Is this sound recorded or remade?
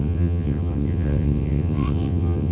remade